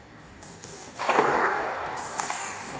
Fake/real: fake